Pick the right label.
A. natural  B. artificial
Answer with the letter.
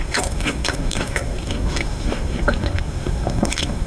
B